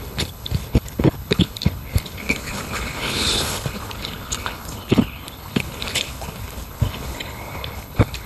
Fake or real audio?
fake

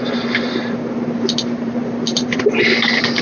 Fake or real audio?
fake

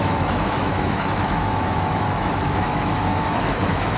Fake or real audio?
fake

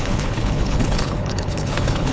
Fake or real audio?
fake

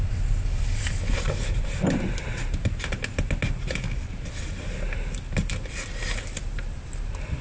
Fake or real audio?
real